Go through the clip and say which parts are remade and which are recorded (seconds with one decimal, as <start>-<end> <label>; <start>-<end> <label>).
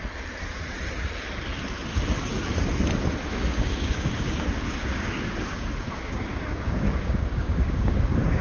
0.0-3.2 recorded; 3.2-8.4 remade